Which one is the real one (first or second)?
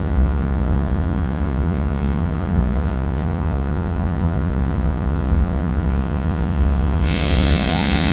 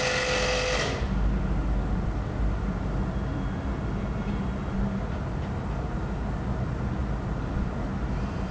second